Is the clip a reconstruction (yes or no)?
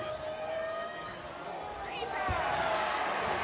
no